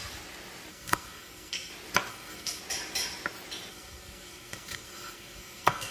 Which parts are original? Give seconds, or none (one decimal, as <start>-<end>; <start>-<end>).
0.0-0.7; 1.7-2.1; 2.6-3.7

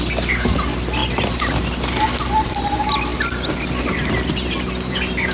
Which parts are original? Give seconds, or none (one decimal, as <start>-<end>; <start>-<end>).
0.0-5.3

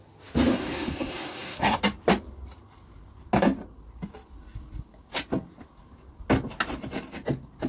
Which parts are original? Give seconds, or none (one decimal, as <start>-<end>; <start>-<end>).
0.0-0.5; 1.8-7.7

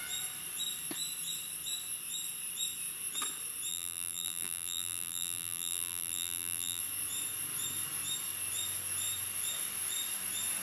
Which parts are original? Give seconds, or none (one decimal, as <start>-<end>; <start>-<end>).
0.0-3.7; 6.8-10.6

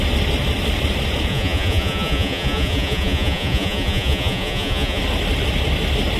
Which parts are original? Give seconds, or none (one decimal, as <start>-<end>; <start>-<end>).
0.0-1.3; 5.0-6.2

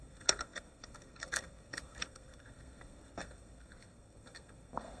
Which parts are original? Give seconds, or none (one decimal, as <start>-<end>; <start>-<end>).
none